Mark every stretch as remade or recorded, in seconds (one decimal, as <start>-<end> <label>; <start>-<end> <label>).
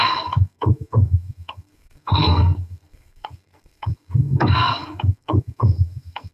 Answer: 0.0-6.3 remade